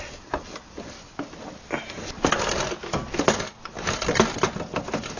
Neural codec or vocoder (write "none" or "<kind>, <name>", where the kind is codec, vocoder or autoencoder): none